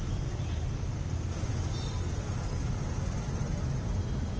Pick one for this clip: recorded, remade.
recorded